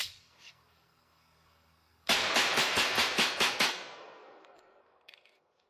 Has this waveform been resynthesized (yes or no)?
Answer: yes